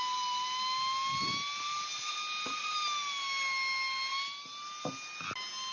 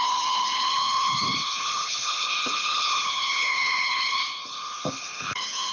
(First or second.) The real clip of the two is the first